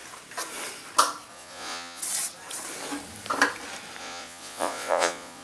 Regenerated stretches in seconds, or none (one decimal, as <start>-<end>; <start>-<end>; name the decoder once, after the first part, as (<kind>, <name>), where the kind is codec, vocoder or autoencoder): 1.3-2.0 (vocoder, Vocos); 4.0-5.4